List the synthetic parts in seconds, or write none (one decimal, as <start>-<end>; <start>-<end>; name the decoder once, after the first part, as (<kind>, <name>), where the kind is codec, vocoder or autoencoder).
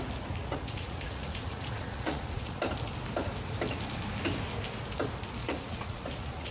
0.4-2.6 (vocoder, Vocos); 5.4-6.5